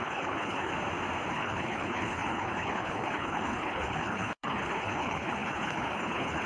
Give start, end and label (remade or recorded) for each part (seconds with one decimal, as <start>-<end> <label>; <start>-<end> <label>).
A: 0.0-0.7 remade; 0.7-1.3 recorded; 1.3-6.5 remade